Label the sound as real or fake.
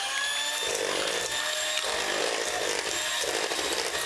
real